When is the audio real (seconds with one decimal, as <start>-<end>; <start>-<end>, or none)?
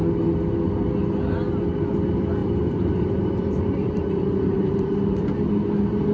0.0-2.4